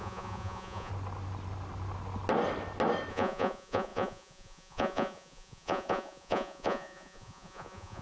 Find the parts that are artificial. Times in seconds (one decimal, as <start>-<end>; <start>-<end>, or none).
0.0-0.9; 3.1-8.0